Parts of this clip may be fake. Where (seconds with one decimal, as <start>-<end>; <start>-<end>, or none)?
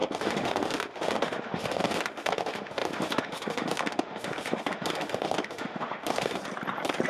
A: 0.0-6.4